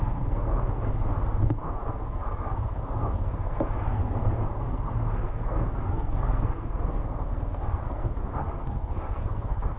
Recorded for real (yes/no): no